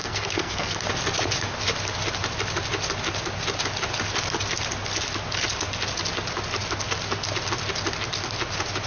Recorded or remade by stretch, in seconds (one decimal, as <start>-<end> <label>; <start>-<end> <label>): 0.0-0.9 remade; 0.9-8.9 recorded